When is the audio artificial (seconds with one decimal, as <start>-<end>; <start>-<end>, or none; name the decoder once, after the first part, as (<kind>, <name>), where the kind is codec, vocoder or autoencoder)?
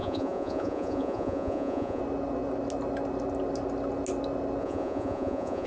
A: 0.0-2.0 (vocoder, Vocos); 4.6-5.7